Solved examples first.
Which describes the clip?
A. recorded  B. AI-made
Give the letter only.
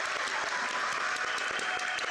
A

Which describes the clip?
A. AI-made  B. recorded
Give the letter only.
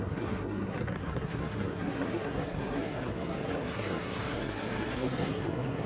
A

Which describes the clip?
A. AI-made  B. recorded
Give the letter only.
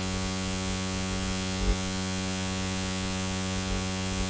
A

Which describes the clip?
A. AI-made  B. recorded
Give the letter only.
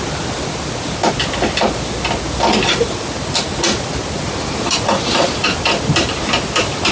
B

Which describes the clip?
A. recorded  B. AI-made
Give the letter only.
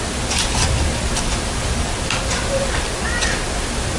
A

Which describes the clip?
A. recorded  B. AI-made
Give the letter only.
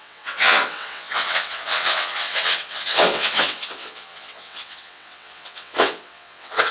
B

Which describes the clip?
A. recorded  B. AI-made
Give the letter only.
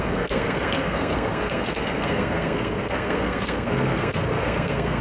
B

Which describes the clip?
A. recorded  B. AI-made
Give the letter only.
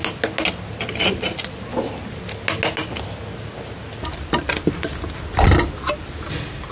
A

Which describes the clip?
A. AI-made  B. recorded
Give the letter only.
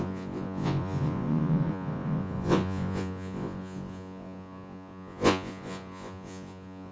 A